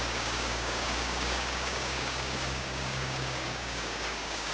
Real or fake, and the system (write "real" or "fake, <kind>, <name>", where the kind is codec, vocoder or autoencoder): fake, codec, DAC